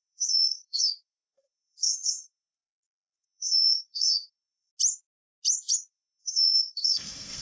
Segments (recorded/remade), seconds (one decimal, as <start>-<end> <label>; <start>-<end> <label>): 0.0-4.7 remade; 4.7-5.9 recorded; 5.9-7.4 remade